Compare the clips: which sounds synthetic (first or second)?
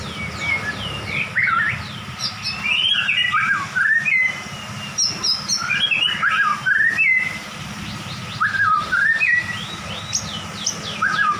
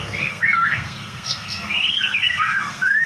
second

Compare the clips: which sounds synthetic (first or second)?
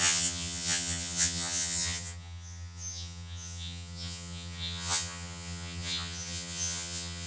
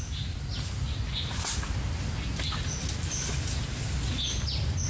first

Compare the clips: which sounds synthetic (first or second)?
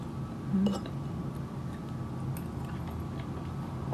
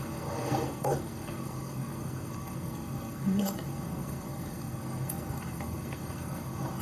second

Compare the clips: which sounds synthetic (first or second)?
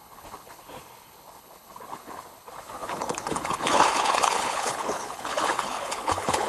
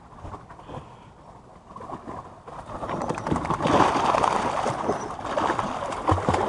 first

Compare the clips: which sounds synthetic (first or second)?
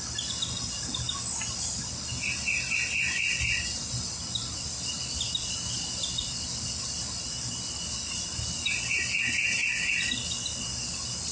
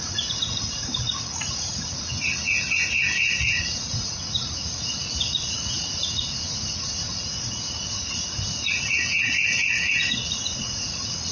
second